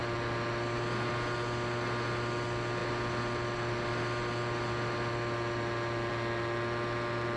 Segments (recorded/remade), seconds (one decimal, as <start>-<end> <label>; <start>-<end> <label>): 0.0-7.4 recorded